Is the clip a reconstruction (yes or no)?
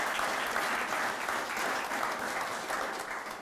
no